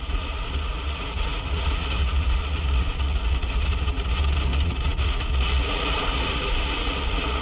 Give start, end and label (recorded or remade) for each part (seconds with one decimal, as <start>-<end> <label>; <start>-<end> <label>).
0.0-7.4 remade